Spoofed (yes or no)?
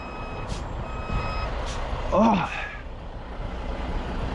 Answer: no